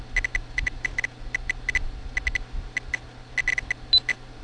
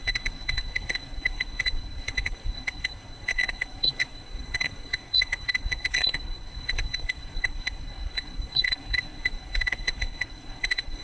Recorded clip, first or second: first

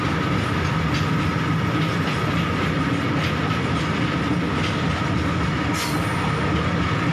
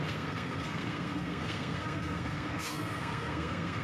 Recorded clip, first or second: first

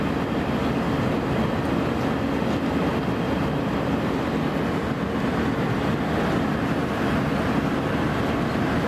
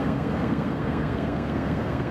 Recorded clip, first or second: first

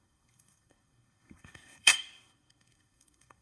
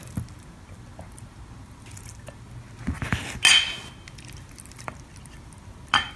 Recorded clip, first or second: second